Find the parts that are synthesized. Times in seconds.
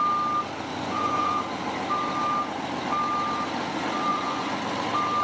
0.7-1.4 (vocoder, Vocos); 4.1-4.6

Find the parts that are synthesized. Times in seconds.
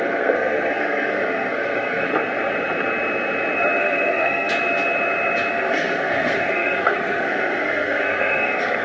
0.0-2.1 (codec, SNAC); 3.8-4.5; 5.5-8.8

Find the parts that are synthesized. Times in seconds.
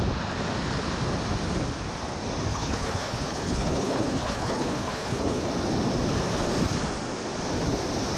2.5-5.5 (codec, HILCodec)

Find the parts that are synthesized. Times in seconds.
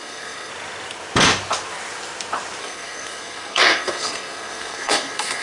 0.0-0.5 (codec, SNAC); 2.6-5.4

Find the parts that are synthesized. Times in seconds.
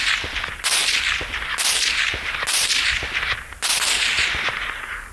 none